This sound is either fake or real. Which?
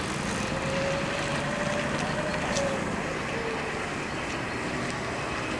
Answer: real